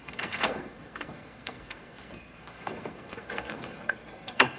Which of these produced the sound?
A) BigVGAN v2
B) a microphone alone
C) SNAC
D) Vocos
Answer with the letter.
C